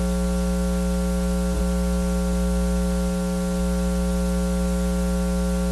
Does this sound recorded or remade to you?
recorded